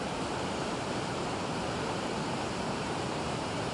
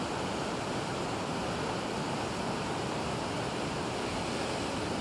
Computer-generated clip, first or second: first